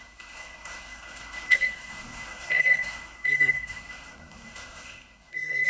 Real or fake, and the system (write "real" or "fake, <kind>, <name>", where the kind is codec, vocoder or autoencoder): fake, codec, SNAC